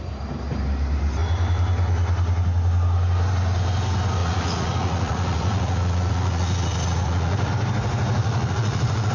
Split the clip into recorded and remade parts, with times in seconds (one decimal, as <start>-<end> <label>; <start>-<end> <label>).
0.0-4.2 recorded; 4.2-7.5 remade; 7.5-8.2 recorded; 8.2-9.1 remade

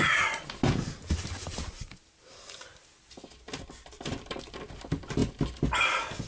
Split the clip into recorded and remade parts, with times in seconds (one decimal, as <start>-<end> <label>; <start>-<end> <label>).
0.0-6.3 recorded

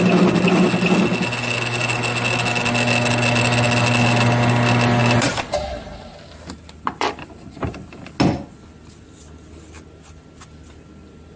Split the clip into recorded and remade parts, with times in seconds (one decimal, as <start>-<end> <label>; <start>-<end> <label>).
0.0-5.0 recorded; 5.0-7.5 remade; 7.5-11.4 recorded

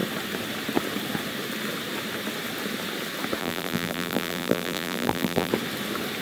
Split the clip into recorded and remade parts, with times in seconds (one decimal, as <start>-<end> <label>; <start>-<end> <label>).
0.0-3.4 recorded; 3.4-5.5 remade; 5.5-6.2 recorded

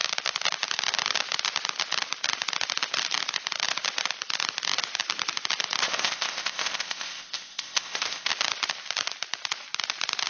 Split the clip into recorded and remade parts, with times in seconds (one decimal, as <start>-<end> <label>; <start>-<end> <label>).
0.0-5.8 recorded; 5.8-8.3 remade; 8.3-10.3 recorded

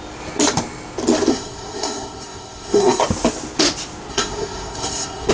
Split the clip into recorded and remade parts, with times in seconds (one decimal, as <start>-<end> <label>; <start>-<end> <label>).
0.0-1.3 recorded; 1.3-3.0 remade; 3.0-4.1 recorded; 4.1-5.3 remade

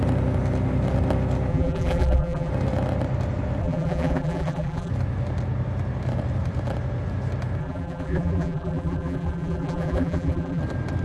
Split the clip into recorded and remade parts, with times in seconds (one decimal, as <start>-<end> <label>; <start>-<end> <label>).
0.0-1.5 recorded; 1.5-2.5 remade; 2.5-3.6 recorded; 3.6-4.9 remade; 4.9-7.6 recorded; 7.6-10.6 remade; 10.6-11.0 recorded

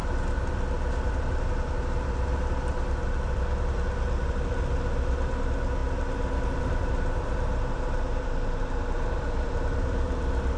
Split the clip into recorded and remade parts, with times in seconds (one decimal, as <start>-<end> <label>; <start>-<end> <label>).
0.0-0.5 recorded; 0.5-10.6 remade